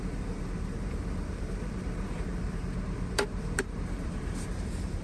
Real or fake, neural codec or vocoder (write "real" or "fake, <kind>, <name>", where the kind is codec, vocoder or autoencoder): fake, vocoder, BigVGAN v2